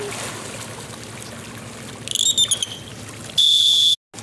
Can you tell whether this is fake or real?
real